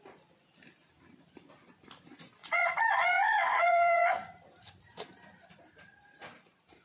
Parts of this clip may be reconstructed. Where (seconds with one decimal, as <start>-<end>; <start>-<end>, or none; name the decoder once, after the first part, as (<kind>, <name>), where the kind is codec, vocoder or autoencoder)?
2.4-4.1 (vocoder, Vocos)